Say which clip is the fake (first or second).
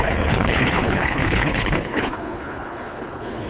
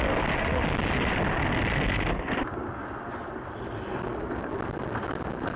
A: first